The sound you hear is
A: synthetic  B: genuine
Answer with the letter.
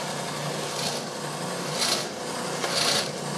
B